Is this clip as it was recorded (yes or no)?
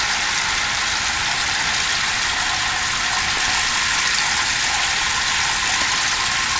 yes